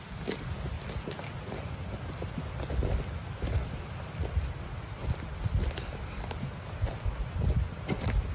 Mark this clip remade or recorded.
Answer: recorded